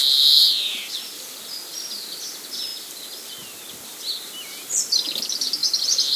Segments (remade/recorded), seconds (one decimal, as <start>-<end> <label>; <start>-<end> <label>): 0.0-0.4 recorded; 0.4-1.8 remade; 1.8-2.7 recorded; 2.7-4.2 remade; 4.2-6.2 recorded